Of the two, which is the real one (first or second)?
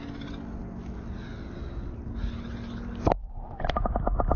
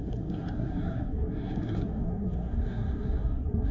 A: first